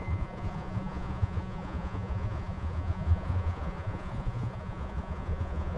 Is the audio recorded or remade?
remade